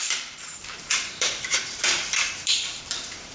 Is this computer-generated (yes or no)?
yes